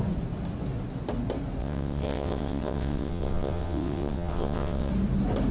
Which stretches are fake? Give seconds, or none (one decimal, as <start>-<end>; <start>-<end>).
1.6-4.9